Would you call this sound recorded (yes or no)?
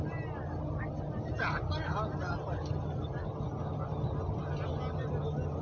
yes